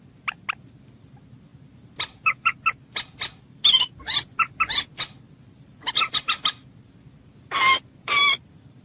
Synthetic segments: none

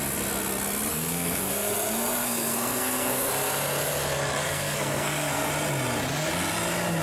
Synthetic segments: 0.9-1.7 (codec, SNAC); 2.2-3.3; 4.4-5.5